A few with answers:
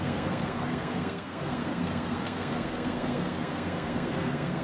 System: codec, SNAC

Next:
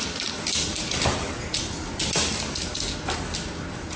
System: none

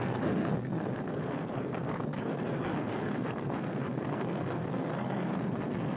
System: codec, SNAC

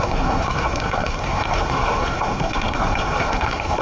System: codec, SNAC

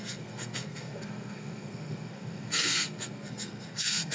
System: codec, SNAC